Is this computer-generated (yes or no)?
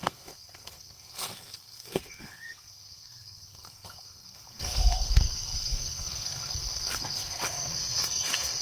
yes